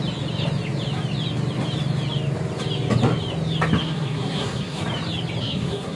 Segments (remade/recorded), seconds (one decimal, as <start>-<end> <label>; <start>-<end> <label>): 0.0-3.8 recorded; 3.8-4.8 remade; 4.8-5.4 recorded; 5.4-6.0 remade